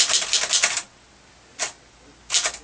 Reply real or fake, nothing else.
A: real